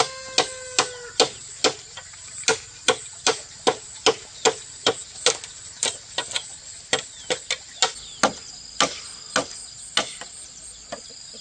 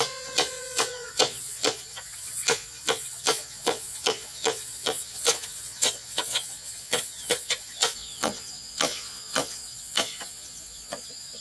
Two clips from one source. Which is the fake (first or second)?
second